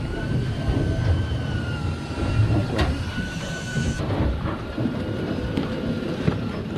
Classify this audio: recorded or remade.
remade